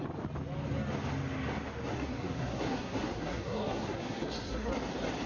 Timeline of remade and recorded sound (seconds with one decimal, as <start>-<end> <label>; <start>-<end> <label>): 0.0-1.9 recorded; 1.9-4.7 remade; 4.7-5.3 recorded